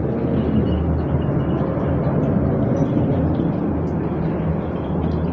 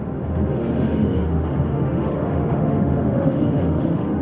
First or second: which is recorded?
first